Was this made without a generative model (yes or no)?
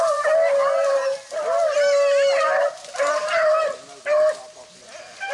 yes